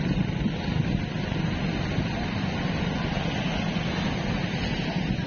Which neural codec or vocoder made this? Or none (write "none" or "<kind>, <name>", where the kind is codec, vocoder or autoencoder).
none